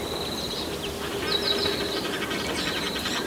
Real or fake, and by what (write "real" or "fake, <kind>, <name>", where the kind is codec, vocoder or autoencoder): real